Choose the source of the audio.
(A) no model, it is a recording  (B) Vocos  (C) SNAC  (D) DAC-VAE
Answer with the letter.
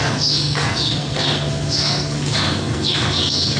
C